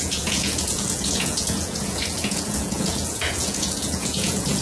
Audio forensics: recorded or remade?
remade